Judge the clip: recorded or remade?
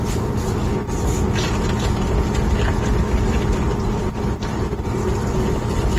recorded